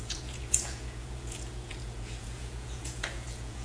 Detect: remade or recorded remade